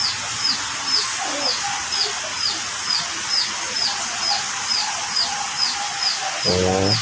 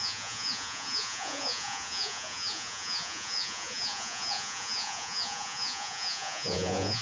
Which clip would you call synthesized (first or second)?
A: second